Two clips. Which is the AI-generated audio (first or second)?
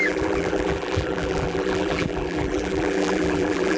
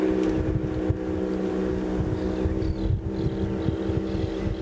first